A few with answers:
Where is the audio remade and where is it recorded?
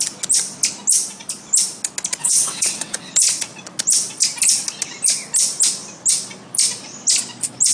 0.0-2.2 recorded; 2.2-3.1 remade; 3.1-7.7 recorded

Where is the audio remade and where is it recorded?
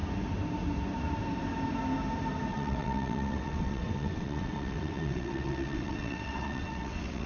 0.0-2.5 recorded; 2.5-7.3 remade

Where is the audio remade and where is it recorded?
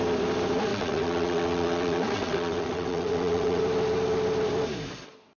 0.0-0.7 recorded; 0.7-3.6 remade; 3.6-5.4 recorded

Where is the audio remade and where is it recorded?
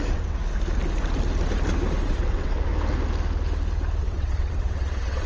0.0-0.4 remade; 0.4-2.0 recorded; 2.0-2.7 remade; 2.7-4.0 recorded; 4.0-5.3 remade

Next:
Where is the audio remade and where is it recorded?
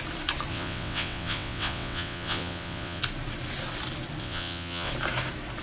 0.0-0.5 recorded; 0.5-3.0 remade; 3.0-4.2 recorded; 4.2-4.9 remade; 4.9-5.6 recorded